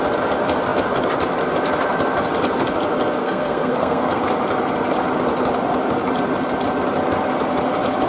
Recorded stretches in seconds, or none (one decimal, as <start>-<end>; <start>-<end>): 0.0-3.2; 4.2-8.1